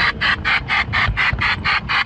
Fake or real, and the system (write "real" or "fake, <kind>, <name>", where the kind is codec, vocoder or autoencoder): real